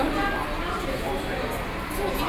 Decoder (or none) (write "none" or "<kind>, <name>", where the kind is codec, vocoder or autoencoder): none